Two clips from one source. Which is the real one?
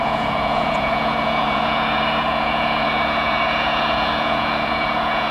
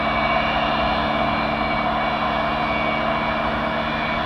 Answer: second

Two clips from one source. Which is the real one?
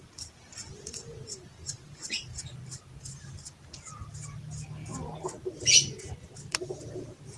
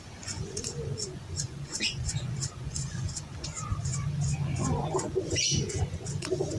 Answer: first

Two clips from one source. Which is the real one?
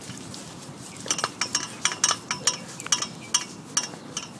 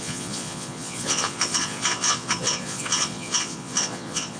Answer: first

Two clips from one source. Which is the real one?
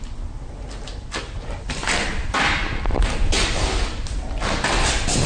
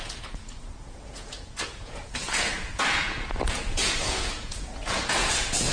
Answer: first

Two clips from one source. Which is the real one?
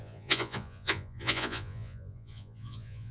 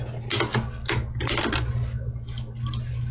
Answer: second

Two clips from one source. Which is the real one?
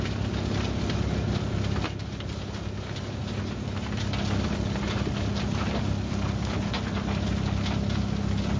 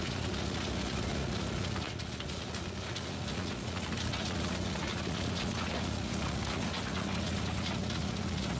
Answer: first